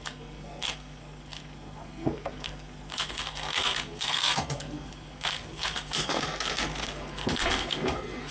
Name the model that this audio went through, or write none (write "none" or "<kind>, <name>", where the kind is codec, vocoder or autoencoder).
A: codec, SNAC